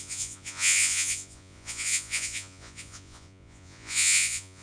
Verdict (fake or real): fake